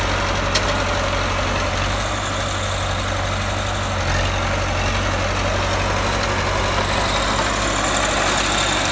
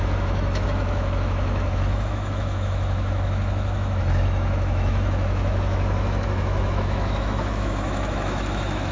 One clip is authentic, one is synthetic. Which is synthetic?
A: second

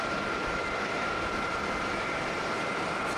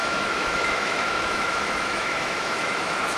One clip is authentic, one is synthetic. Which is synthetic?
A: second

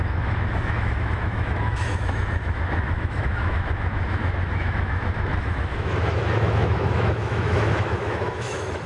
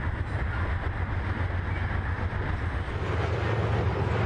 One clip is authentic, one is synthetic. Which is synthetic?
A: first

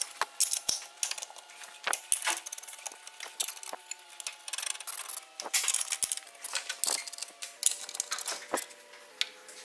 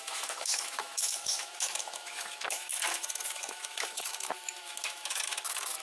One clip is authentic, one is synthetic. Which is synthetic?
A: second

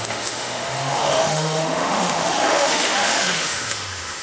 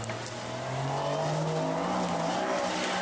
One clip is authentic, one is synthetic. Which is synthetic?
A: first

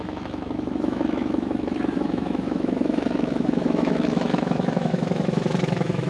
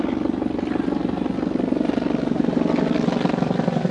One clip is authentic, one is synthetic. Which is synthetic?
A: first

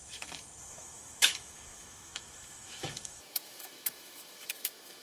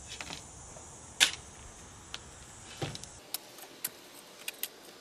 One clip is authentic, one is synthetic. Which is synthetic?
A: first